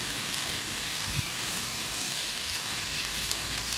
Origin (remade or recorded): remade